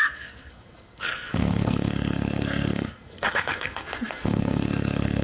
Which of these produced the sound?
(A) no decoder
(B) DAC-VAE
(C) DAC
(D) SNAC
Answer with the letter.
D